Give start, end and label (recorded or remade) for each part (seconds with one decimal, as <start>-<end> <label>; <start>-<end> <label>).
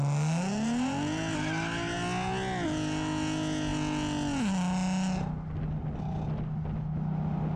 0.0-7.6 recorded